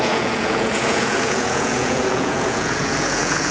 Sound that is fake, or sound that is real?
fake